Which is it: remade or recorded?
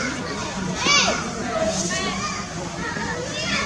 recorded